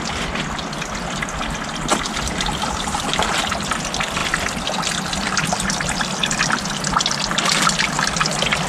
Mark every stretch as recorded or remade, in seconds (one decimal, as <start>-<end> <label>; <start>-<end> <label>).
0.0-8.7 recorded